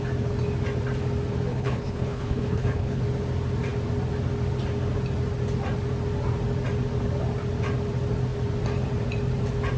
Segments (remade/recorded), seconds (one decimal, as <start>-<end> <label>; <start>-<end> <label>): 0.0-1.5 recorded; 1.5-3.0 remade; 3.0-9.8 recorded

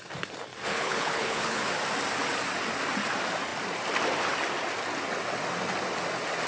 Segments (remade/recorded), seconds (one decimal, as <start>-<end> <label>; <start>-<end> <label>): 0.0-0.7 recorded; 0.7-1.7 remade; 1.7-6.5 recorded

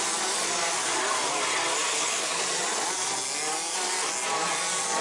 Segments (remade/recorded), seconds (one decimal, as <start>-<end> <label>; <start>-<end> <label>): 0.0-1.9 recorded; 1.9-2.5 remade; 2.5-5.0 recorded

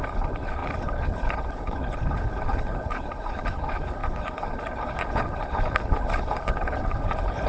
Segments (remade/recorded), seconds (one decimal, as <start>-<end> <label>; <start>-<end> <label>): 0.0-7.5 remade

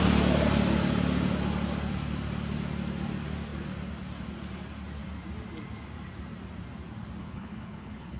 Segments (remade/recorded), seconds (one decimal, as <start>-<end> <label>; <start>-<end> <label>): 0.0-7.2 recorded; 7.2-8.2 remade

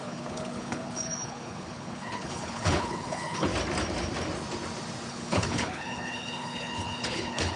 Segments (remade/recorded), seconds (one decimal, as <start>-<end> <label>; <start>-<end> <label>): 0.0-3.5 remade; 3.5-5.1 recorded; 5.1-7.6 remade

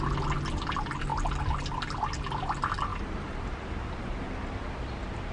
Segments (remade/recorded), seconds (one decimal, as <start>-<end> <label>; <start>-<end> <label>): 0.0-5.3 recorded

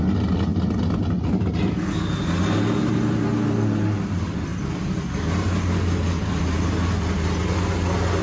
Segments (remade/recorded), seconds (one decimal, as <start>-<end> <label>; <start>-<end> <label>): 0.0-8.2 recorded